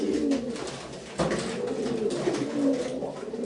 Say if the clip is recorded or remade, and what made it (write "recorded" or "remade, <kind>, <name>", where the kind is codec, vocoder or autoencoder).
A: recorded